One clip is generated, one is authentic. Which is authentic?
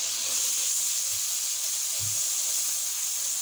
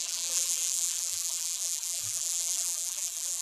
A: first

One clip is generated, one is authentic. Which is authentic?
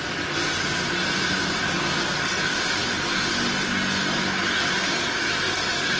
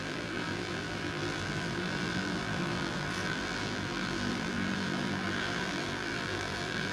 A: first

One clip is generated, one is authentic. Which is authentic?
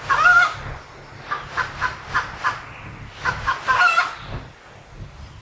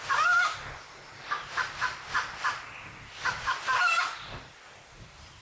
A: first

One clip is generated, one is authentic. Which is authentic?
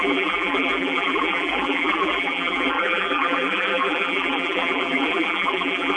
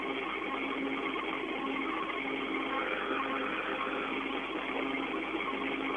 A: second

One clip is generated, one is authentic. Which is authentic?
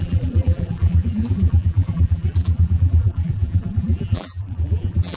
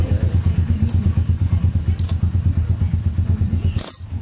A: second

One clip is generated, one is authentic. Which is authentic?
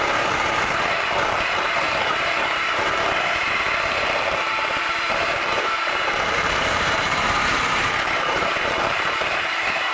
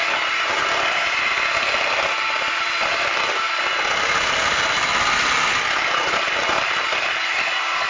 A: second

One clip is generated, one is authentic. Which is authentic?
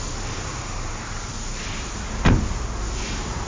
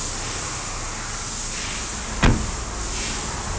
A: second